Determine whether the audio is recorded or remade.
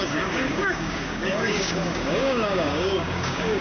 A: remade